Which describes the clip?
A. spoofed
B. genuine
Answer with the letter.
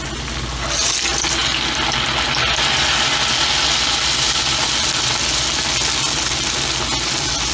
B